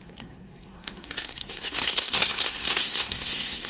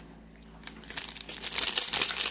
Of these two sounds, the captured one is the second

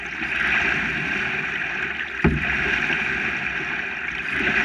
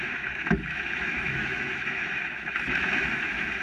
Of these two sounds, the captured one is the first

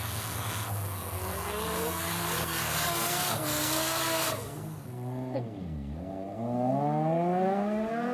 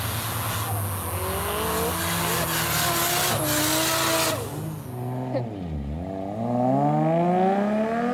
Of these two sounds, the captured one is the second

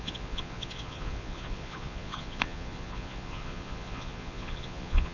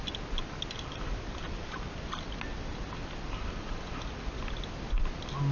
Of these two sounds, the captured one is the second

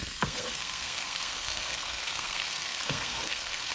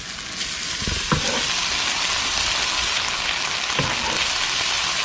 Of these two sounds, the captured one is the second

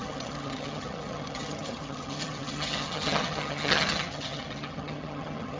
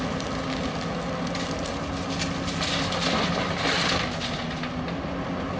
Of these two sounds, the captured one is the second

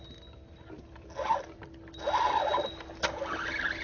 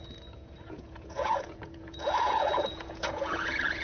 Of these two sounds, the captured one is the first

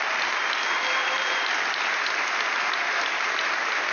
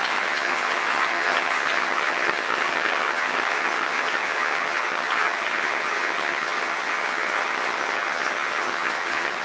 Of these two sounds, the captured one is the first